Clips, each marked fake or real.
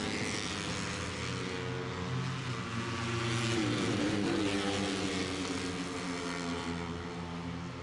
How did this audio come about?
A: real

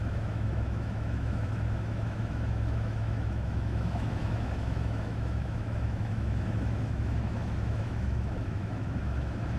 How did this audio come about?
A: fake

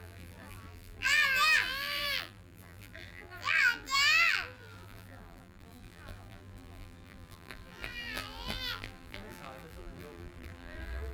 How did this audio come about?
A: fake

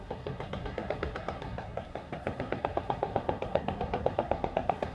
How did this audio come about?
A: fake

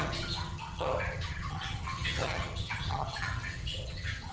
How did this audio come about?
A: fake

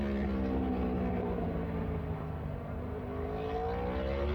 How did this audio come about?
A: real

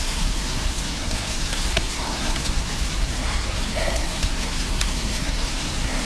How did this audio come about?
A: fake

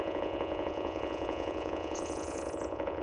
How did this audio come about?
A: fake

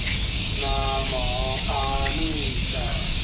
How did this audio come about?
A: fake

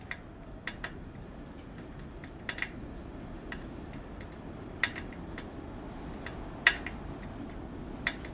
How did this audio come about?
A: real